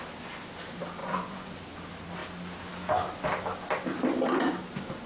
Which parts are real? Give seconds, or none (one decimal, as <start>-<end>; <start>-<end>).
0.0-1.0; 1.6-5.1